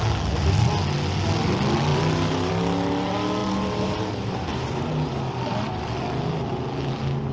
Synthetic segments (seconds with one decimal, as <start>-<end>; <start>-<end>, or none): 1.9-2.5; 3.4-5.2